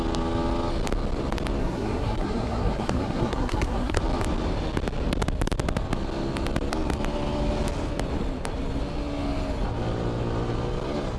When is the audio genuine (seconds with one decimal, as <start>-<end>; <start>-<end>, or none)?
0.0-1.6; 4.0-11.2